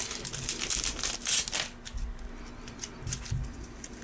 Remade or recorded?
recorded